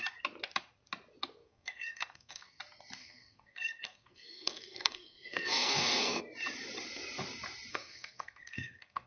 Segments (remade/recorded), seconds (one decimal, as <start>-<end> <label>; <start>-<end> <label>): 0.0-1.4 recorded; 1.4-2.6 remade; 2.6-3.0 recorded; 3.0-6.2 remade; 6.2-7.7 recorded; 7.7-9.1 remade